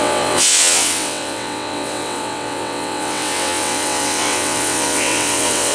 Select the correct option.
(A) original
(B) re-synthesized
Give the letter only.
B